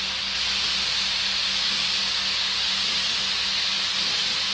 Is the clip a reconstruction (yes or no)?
no